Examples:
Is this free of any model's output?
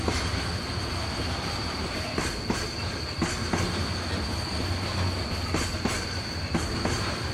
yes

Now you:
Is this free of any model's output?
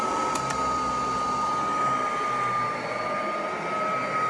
yes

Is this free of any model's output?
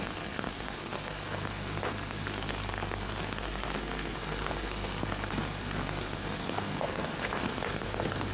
no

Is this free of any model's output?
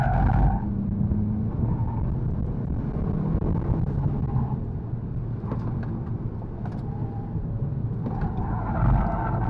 yes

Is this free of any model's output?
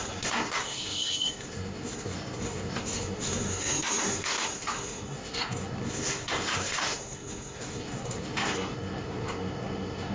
no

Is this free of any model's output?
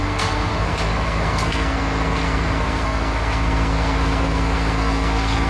no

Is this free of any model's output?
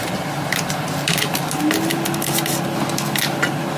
yes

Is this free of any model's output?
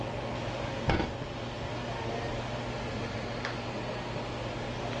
yes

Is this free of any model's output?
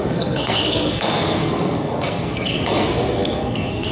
no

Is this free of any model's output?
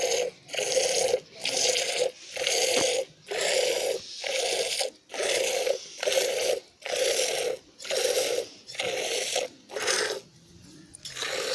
yes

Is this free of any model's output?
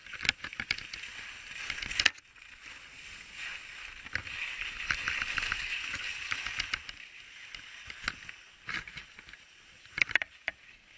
yes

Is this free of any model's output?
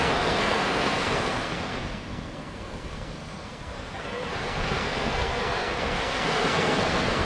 no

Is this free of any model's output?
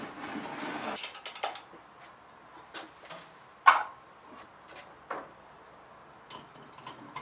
yes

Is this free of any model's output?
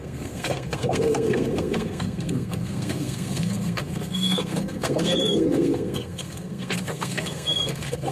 no